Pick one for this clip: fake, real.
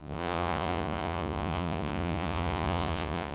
fake